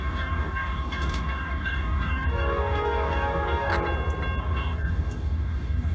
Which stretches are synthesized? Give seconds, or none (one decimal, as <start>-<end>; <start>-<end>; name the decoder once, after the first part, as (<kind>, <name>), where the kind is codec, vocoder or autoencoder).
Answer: 0.0-3.7 (codec, DAC); 4.4-5.9